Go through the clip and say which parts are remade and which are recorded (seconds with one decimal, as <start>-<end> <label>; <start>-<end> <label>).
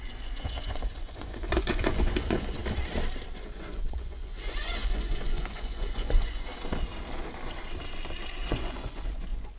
0.0-2.6 remade; 2.6-3.3 recorded; 3.3-6.5 remade; 6.5-8.3 recorded; 8.3-9.6 remade